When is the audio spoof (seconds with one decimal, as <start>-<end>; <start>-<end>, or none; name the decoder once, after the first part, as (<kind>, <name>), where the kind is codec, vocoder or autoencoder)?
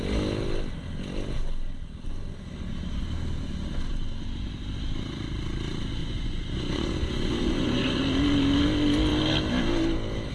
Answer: 6.0-8.0 (vocoder, Vocos)